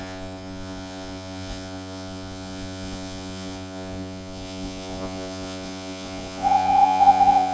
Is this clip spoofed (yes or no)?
yes